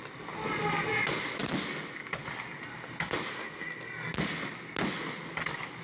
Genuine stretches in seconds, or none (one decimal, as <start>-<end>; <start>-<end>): 0.0-5.8